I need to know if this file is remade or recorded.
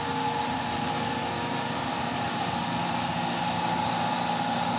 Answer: recorded